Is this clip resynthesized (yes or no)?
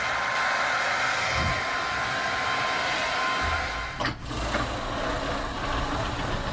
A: no